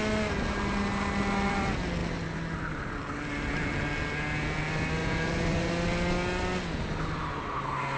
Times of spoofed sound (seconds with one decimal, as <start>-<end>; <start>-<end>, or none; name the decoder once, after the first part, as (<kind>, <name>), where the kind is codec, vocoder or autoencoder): 5.0-5.7 (vocoder, Vocos)